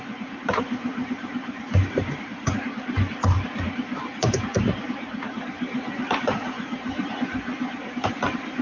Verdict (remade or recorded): remade